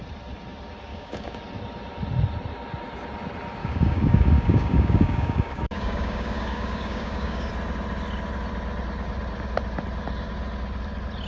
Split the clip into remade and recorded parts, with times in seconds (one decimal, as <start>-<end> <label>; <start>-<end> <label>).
0.0-0.9 recorded; 0.9-1.4 remade; 1.4-3.6 recorded; 3.6-7.5 remade; 7.5-11.3 recorded